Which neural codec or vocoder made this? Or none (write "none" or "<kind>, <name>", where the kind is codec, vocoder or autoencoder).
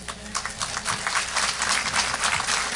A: none